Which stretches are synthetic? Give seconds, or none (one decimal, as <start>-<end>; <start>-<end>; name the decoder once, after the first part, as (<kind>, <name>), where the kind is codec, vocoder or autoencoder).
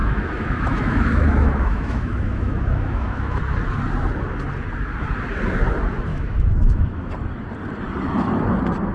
0.0-3.4 (autoencoder, DAC-VAE); 6.1-7.1